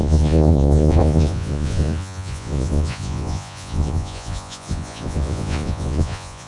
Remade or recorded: remade